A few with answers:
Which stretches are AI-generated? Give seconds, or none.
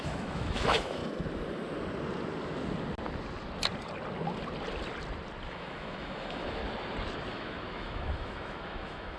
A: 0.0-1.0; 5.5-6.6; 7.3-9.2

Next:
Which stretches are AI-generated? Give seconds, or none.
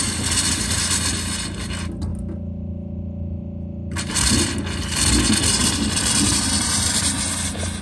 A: 5.6-7.0